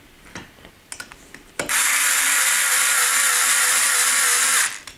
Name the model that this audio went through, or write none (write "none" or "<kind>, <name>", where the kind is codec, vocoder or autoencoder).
none